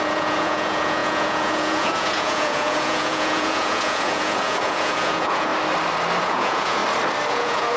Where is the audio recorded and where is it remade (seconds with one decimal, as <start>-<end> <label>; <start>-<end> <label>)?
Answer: 0.0-5.5 remade; 5.5-6.2 recorded; 6.2-6.8 remade; 6.8-7.3 recorded; 7.3-7.8 remade